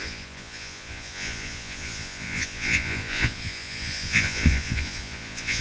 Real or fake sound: fake